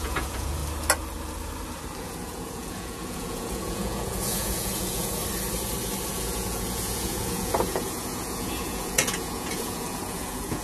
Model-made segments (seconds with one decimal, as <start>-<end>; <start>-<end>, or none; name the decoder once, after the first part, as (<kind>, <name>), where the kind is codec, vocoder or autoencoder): 0.0-0.6 (vocoder, Vocos); 2.0-5.2; 6.1-10.6